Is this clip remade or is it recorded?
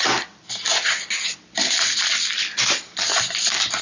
recorded